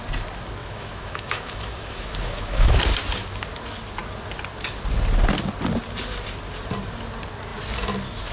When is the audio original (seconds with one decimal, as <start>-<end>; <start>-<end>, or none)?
0.0-0.6; 2.8-8.3

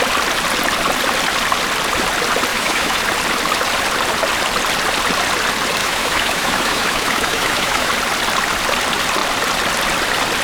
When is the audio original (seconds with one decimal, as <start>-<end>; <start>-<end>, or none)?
0.0-2.5; 3.0-5.8; 7.9-10.4